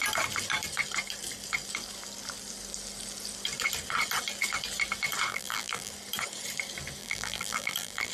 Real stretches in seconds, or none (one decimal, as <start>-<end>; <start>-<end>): 0.0-5.3; 5.9-7.0